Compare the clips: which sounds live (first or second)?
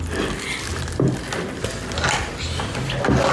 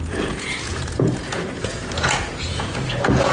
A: first